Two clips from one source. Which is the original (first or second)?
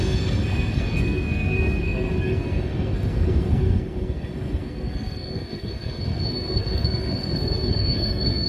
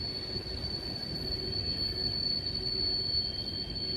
second